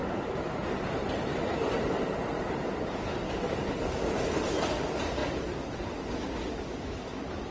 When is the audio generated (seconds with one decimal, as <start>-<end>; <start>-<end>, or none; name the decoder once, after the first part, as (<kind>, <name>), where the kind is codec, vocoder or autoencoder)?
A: none